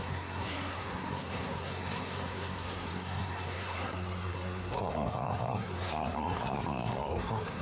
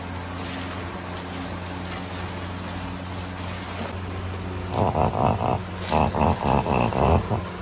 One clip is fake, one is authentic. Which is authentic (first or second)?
second